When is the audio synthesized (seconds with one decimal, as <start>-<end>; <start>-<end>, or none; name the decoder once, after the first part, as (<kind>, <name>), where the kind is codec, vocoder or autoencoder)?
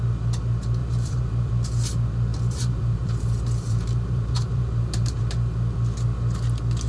0.8-1.5 (vocoder, BigVGAN v2); 2.3-5.2